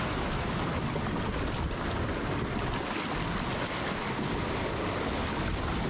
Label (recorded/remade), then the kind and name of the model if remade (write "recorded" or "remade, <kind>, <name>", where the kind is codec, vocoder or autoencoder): recorded